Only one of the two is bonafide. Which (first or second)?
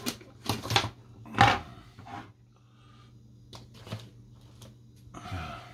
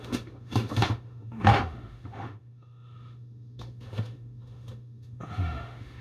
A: first